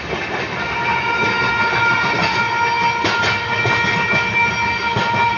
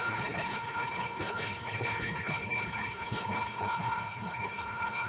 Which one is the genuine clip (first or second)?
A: first